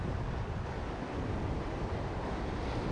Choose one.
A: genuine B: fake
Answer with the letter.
A